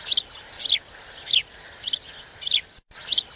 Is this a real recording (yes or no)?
yes